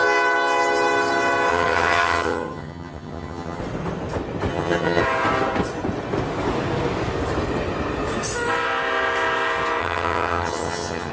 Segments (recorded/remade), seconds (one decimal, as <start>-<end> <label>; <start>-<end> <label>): 0.0-1.5 recorded; 1.5-3.6 remade; 3.6-4.5 recorded; 4.5-5.0 remade; 5.0-9.8 recorded; 9.8-11.1 remade